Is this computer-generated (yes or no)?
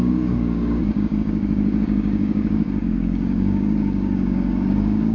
yes